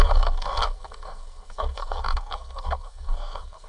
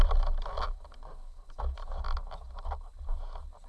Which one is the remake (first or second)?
first